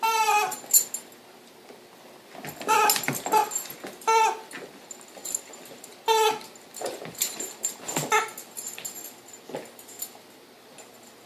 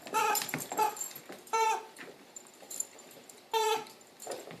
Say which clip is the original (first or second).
first